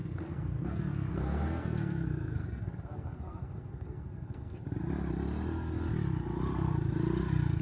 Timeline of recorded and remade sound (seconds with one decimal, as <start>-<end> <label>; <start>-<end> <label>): 0.0-4.6 remade; 4.6-7.6 recorded